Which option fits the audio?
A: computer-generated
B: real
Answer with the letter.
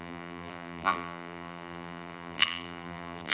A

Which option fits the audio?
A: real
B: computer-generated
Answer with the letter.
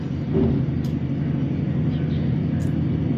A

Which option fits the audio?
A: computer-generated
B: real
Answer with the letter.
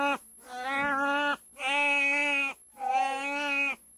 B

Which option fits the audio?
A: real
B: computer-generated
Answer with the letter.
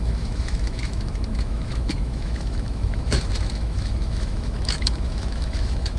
B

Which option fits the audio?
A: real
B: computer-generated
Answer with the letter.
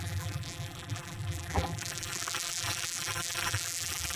B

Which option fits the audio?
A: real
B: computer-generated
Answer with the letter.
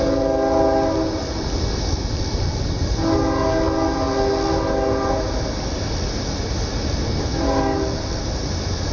A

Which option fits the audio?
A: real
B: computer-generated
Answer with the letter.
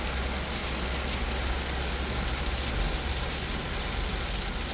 A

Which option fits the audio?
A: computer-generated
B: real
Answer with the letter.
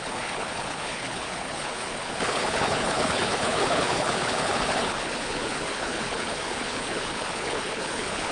A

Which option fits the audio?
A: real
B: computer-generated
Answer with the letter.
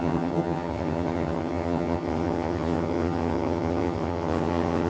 B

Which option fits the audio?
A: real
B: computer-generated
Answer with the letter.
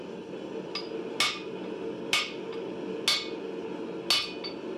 A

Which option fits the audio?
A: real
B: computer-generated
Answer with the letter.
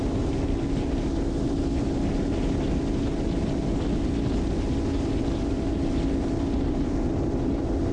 A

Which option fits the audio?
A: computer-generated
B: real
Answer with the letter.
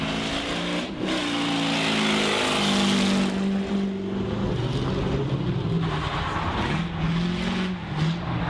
B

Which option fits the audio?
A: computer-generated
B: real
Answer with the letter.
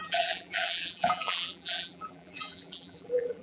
A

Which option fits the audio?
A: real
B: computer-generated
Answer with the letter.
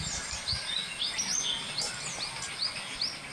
A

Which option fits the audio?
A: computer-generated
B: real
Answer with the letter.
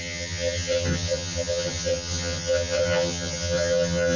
A